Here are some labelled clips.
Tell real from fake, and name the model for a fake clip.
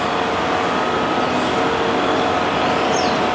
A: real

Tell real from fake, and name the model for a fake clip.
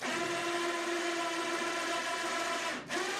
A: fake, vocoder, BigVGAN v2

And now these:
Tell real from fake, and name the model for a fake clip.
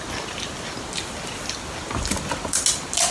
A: real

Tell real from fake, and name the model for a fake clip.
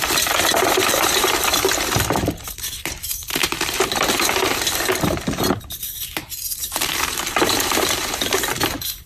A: fake, vocoder, BigVGAN v2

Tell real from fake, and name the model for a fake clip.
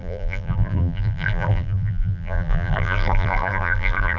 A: fake, vocoder, BigVGAN v2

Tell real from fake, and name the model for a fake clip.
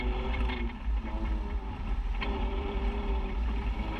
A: fake, vocoder, BigVGAN v2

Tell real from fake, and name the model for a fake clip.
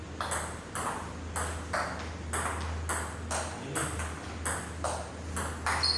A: real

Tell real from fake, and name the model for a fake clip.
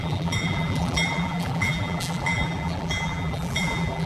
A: fake, vocoder, BigVGAN v2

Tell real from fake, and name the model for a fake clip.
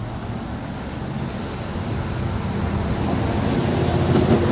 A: real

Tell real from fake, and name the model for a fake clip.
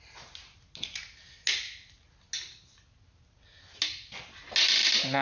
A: real